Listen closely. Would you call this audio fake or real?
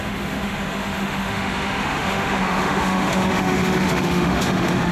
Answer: fake